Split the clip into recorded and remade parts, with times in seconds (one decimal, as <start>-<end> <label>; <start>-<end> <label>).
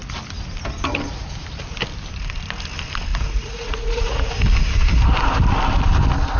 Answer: 0.0-3.1 recorded; 3.1-4.3 remade; 4.3-6.4 recorded